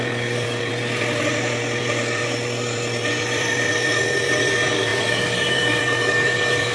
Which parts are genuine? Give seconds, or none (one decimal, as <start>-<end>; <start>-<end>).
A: 0.7-4.5